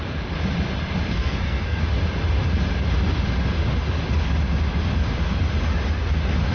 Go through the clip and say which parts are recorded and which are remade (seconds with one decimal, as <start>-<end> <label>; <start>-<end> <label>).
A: 0.0-1.1 recorded; 1.1-1.8 remade; 1.8-6.5 recorded